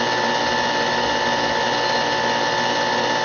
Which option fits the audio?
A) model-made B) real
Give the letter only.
B